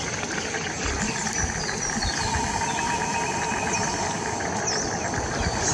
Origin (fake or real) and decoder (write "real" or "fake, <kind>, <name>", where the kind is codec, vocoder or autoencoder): real